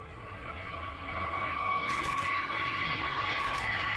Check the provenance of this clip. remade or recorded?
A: remade